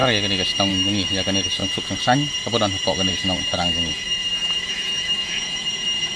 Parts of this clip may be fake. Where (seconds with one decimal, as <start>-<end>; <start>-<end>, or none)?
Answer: 0.7-1.6; 3.1-6.2